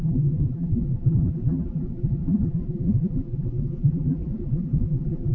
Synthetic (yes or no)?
yes